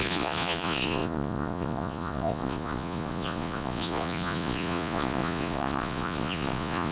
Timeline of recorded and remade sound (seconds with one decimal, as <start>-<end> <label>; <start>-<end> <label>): 0.0-6.9 remade